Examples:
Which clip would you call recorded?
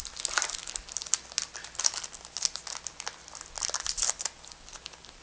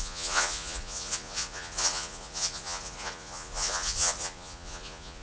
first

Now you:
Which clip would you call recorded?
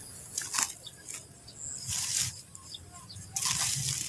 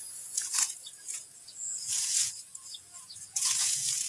first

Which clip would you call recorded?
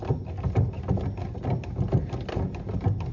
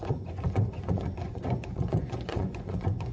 first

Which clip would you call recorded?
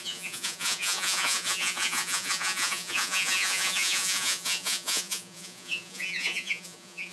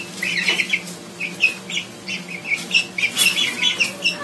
second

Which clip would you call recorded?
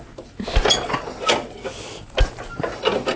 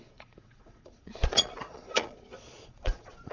first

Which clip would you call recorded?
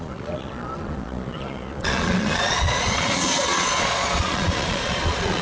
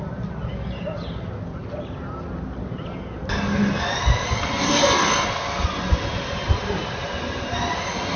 second